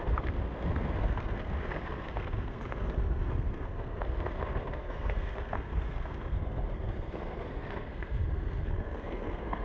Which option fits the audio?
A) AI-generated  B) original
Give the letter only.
A